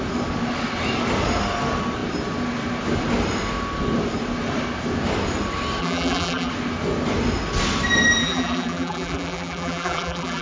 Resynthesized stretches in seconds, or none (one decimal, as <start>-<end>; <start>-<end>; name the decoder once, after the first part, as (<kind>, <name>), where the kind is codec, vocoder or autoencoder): 5.8-6.5 (vocoder, BigVGAN v2); 8.2-10.4